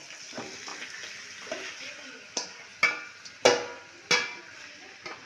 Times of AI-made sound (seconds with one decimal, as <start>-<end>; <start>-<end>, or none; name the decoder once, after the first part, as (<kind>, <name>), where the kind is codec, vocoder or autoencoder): none